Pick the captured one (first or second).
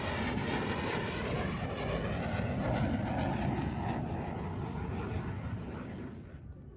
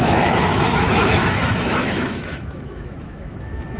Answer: first